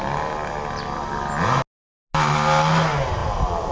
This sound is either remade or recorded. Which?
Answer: recorded